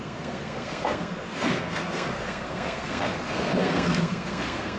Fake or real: fake